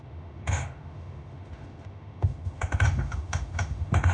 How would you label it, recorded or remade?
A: remade